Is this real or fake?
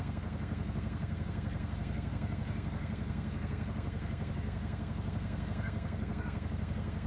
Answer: fake